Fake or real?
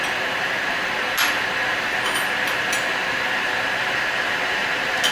real